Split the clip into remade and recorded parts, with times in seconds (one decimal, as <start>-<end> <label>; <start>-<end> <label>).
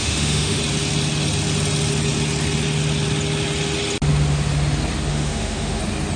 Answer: 0.0-0.6 remade; 0.6-5.1 recorded; 5.1-5.8 remade; 5.8-6.2 recorded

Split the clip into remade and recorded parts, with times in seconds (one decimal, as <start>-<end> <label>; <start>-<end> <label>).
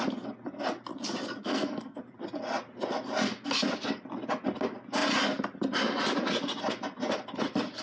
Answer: 0.0-1.4 recorded; 1.4-2.0 remade; 2.0-7.8 recorded